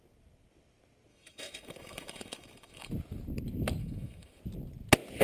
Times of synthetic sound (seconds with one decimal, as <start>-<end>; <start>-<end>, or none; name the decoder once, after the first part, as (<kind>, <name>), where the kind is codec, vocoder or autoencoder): 1.1-2.9 (autoencoder, DAC-VAE); 3.8-4.4